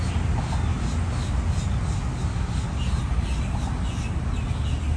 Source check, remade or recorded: recorded